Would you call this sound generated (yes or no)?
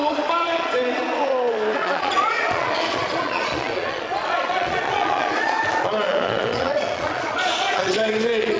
yes